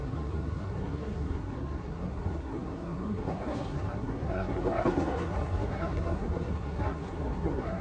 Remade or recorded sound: remade